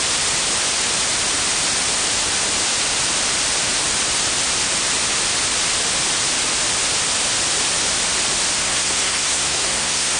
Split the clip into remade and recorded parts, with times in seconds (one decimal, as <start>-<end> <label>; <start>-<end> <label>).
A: 0.0-8.6 recorded; 8.6-10.2 remade